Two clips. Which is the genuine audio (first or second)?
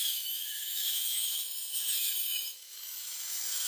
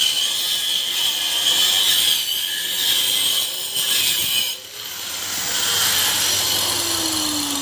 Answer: second